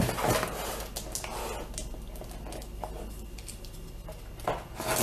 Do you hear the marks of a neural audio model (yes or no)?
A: no